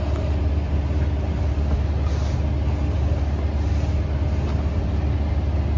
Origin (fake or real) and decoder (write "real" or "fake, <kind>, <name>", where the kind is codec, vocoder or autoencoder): real